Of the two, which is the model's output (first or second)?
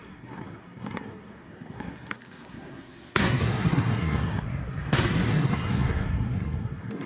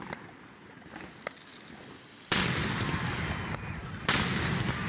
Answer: first